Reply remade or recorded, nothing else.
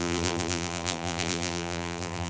remade